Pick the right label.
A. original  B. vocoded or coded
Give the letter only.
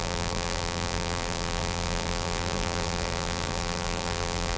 B